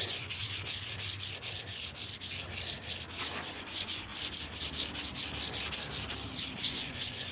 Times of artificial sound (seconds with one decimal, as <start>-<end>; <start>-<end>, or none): 0.0-0.4; 3.5-4.1; 6.6-7.3